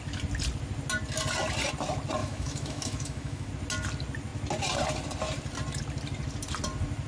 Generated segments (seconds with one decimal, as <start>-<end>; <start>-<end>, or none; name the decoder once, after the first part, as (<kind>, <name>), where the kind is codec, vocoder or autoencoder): 2.2-3.5 (autoencoder, DAC-VAE)